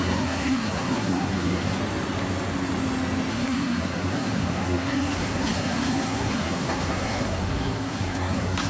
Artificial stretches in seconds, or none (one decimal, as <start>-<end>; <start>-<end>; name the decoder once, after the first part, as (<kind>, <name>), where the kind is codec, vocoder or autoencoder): 0.0-1.8 (codec, SNAC); 3.3-8.7

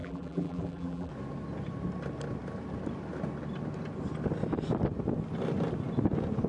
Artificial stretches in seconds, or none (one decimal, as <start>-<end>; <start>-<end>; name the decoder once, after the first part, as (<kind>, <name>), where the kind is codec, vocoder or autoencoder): 0.0-1.1 (vocoder, BigVGAN v2)

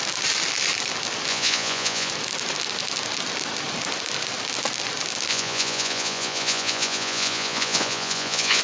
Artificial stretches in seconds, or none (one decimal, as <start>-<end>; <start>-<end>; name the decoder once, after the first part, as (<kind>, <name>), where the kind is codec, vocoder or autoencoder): 1.3-2.1 (vocoder, Vocos); 5.3-8.6

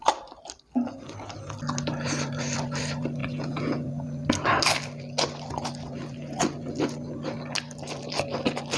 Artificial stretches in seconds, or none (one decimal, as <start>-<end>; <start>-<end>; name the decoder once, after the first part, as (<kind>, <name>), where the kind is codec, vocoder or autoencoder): 3.2-3.9 (vocoder, Vocos)

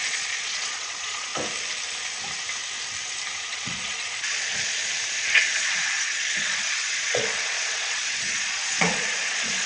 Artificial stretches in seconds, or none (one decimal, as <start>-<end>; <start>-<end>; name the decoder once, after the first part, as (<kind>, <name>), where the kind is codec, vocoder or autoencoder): 0.0-1.3 (vocoder, Vocos); 3.4-4.8; 5.9-9.7

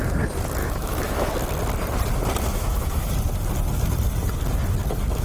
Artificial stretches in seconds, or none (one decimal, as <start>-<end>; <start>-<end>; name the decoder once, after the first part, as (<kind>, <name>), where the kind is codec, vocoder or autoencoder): 0.6-1.3 (autoencoder, DAC-VAE); 2.5-3.1

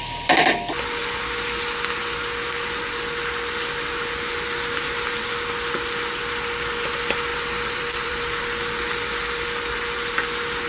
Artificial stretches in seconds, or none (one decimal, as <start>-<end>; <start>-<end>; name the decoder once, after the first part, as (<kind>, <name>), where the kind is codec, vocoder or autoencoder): 7.3-8.4 (vocoder, BigVGAN v2)

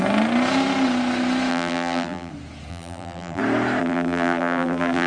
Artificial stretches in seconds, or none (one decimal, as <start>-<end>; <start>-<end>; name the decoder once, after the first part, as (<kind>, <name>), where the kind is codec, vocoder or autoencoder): 1.5-2.3 (vocoder, BigVGAN v2); 2.7-3.4; 3.8-5.1